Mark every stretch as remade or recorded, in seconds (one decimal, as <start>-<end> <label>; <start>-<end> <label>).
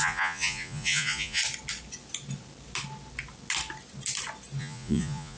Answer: 0.0-1.4 remade; 1.4-4.6 recorded; 4.6-5.4 remade